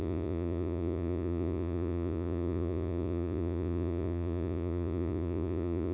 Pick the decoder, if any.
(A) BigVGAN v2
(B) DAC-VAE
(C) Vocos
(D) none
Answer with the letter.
C